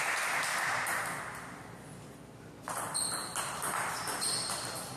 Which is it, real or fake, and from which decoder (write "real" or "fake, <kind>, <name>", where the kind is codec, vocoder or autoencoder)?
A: real